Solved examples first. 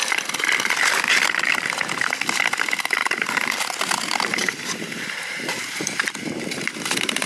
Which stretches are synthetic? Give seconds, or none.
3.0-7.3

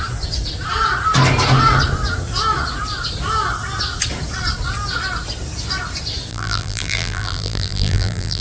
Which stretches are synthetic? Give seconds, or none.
6.3-8.4

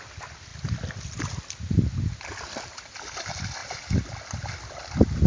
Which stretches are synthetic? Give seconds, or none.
0.0-3.6; 4.2-5.3

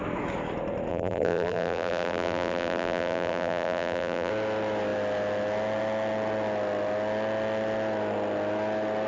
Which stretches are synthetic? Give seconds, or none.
0.9-4.3

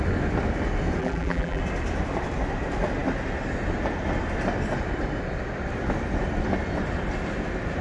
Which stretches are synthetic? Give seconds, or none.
1.0-1.6